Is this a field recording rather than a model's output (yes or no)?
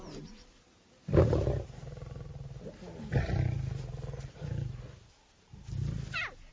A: yes